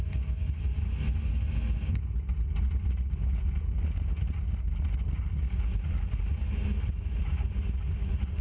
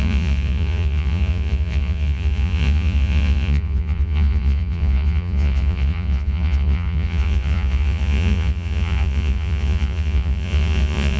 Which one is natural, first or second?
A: first